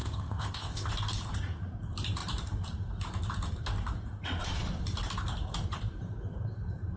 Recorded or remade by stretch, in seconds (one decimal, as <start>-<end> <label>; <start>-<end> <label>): 0.0-0.9 remade; 0.9-7.0 recorded